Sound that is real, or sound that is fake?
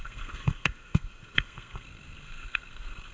fake